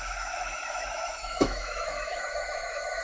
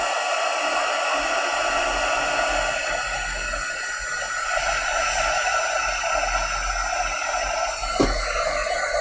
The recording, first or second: second